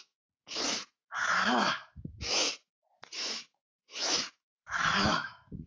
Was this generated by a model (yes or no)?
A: yes